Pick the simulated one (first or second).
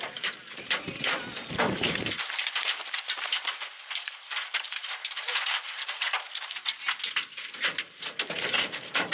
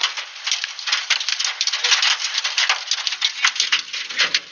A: first